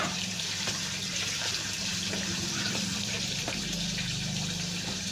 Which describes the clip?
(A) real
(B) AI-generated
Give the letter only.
B